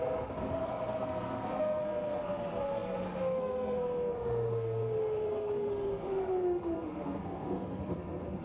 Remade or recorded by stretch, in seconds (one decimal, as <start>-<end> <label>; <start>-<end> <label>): 0.0-8.4 remade